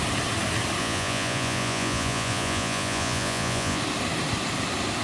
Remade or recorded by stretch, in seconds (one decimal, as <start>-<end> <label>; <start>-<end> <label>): 0.0-0.8 recorded; 0.8-3.8 remade; 3.8-5.0 recorded